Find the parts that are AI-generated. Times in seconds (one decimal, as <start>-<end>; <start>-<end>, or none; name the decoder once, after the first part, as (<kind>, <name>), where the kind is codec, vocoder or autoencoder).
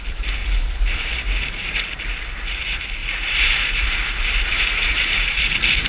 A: 0.4-2.0 (vocoder, BigVGAN v2); 3.0-5.5